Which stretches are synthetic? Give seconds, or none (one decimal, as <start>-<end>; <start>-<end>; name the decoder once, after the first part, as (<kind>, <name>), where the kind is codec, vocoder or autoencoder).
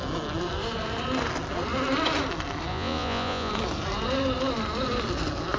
2.7-3.5 (vocoder, Vocos)